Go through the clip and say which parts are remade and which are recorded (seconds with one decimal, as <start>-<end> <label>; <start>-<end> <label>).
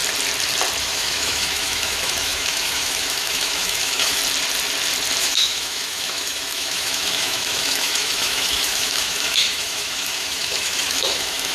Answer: 0.0-0.8 recorded; 0.8-4.2 remade; 4.2-5.2 recorded; 5.2-11.5 remade